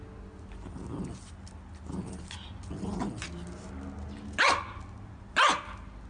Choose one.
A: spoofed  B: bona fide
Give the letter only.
B